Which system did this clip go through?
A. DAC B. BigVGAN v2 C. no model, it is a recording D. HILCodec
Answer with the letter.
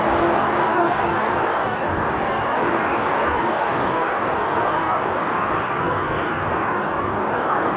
A